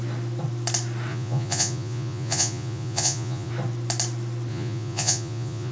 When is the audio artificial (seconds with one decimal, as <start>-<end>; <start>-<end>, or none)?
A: 1.1-3.5; 4.5-5.7